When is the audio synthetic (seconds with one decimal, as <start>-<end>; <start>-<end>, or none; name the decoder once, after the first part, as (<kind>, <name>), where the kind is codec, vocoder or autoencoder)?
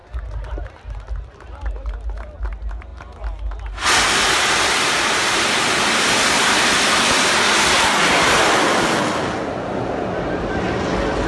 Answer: 0.0-0.5 (vocoder, BigVGAN v2)